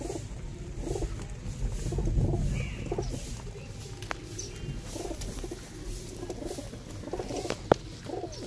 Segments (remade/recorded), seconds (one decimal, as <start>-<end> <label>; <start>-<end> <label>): 0.0-8.5 recorded